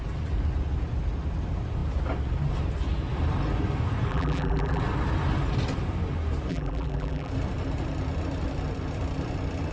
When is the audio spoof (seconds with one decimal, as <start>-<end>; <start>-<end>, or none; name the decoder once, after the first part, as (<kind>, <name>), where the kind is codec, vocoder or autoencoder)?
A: 4.1-4.8 (vocoder, BigVGAN v2); 6.5-7.3